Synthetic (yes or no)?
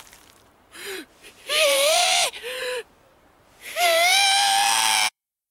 yes